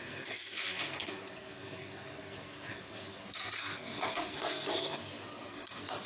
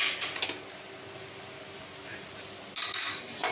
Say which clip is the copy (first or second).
first